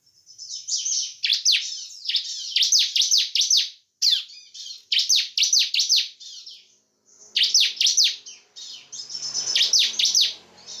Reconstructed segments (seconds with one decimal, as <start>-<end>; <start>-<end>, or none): none